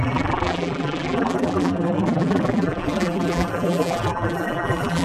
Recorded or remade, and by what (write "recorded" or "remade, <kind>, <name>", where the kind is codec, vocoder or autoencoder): remade, vocoder, BigVGAN v2